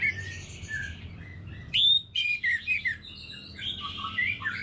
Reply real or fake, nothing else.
real